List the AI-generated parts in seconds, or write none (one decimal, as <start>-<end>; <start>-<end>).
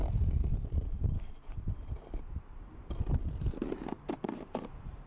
3.1-5.1